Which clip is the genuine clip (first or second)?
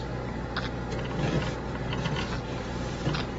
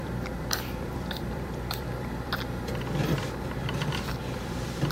first